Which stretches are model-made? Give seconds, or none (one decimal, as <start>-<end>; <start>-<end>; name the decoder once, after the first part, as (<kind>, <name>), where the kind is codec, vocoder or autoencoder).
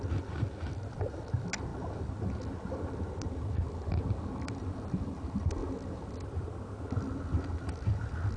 none